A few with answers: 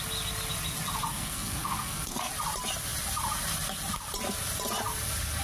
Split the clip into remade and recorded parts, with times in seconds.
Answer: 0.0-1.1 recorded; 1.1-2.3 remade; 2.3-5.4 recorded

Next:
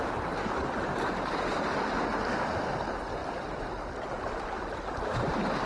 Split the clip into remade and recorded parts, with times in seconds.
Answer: 0.0-5.7 recorded

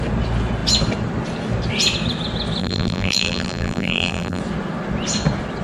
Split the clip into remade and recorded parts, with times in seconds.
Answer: 0.0-2.6 recorded; 2.6-4.4 remade; 4.4-5.6 recorded

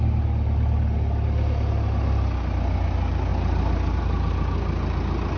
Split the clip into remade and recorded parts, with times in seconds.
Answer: 0.0-5.4 recorded

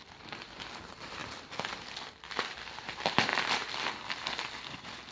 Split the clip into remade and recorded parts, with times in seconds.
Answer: 0.0-5.1 recorded

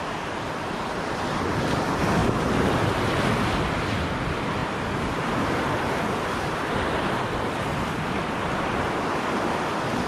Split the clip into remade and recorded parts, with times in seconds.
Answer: 0.0-4.6 recorded; 4.6-7.9 remade; 7.9-10.1 recorded